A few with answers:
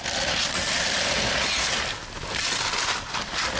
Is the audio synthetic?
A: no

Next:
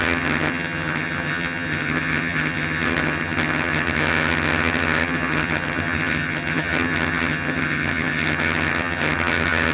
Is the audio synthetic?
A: yes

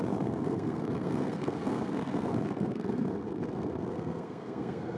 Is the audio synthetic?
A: yes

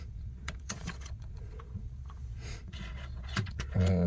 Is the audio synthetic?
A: yes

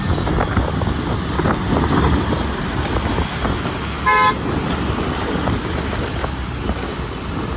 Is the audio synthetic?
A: no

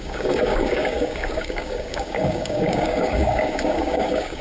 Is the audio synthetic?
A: yes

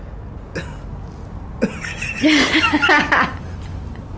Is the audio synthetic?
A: no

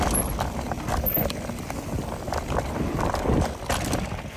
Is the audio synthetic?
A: no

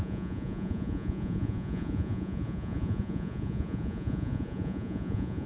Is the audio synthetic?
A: yes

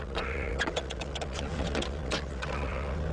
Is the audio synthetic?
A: yes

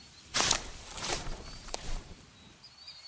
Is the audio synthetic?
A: yes